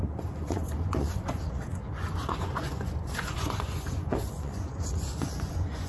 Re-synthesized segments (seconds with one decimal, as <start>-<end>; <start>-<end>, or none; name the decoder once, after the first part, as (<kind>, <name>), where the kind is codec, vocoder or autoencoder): 0.0-5.9 (vocoder, Vocos)